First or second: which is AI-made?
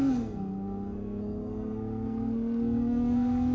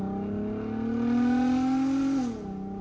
first